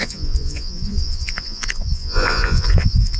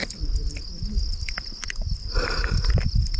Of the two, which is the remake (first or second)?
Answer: first